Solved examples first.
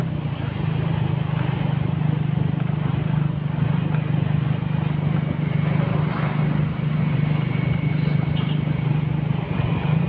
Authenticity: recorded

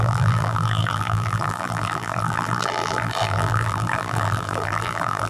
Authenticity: remade